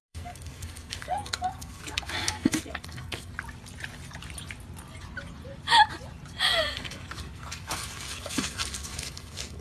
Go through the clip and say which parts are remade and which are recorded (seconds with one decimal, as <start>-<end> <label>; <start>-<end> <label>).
0.0-3.3 remade; 3.3-6.4 recorded; 6.4-9.6 remade